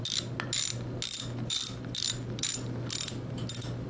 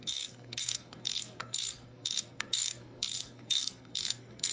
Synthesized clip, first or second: second